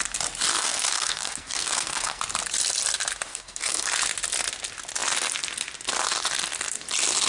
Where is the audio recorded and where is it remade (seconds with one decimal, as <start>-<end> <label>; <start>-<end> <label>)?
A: 0.0-0.5 recorded; 0.5-2.2 remade; 2.2-3.3 recorded; 3.3-3.9 remade; 3.9-7.3 recorded